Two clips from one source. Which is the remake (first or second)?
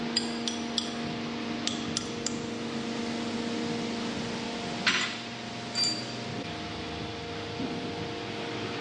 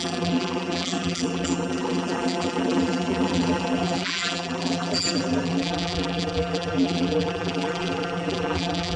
second